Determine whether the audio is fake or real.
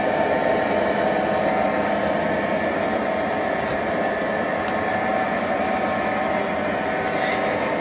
real